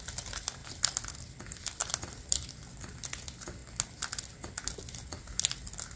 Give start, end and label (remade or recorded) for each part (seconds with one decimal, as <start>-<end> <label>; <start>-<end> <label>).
0.0-1.8 recorded; 1.8-2.8 remade; 2.8-6.0 recorded